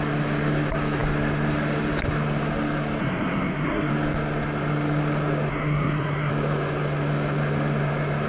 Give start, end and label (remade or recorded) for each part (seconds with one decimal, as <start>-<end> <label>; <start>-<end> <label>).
0.0-3.0 recorded; 3.0-3.9 remade; 3.9-5.5 recorded; 5.5-6.3 remade; 6.3-8.3 recorded